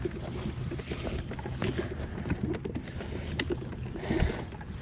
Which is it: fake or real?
real